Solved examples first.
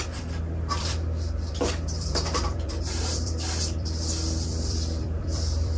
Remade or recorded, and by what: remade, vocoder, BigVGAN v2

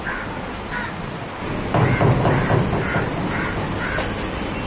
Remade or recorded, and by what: recorded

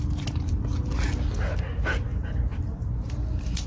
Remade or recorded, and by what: recorded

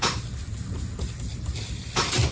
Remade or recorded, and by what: recorded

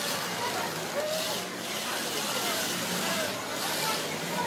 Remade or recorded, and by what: remade, vocoder, BigVGAN v2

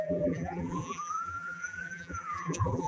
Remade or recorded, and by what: remade, vocoder, BigVGAN v2